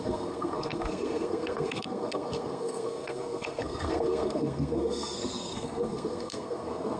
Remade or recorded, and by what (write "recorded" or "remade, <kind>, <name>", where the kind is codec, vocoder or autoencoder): remade, codec, SNAC